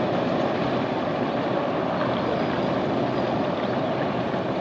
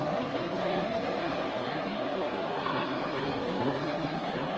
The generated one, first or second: second